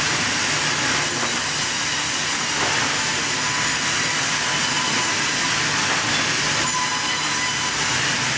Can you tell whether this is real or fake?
real